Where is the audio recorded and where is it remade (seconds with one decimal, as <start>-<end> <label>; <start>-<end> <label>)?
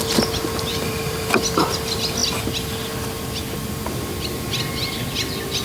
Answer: 0.0-0.7 recorded; 0.7-1.3 remade; 1.3-5.6 recorded